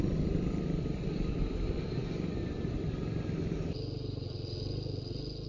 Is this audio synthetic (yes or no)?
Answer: no